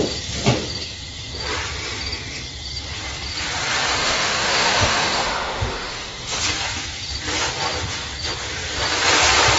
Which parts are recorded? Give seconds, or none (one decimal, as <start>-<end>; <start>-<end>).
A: 0.0-4.0; 6.4-9.6

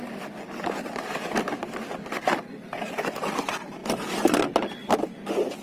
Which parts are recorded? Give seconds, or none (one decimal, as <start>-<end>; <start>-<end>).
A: 0.0-5.6

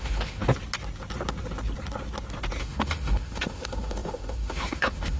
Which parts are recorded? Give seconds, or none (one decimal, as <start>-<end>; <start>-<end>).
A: 0.4-2.6

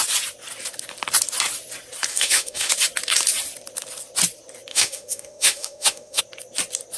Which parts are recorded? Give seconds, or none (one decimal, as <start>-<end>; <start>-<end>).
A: 0.0-2.1; 2.7-4.7; 6.2-7.0

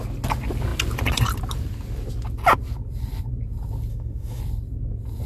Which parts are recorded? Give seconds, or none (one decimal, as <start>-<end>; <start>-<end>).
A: 0.0-3.9; 4.4-5.3

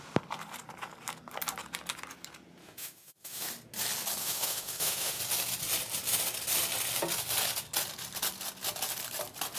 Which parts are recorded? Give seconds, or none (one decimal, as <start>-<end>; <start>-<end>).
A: 0.0-2.6; 3.5-4.2; 5.2-9.6

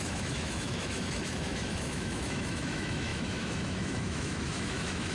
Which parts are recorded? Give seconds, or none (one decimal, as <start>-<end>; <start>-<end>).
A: none

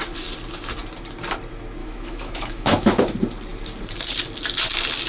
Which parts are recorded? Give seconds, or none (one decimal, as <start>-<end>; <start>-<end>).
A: 0.0-1.8; 3.0-5.1